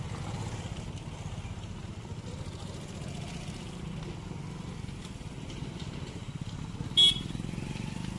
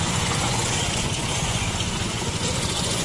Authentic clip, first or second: first